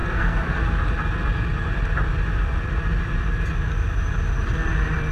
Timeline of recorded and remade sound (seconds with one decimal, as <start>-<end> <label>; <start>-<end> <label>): 0.0-0.6 remade; 0.6-5.1 recorded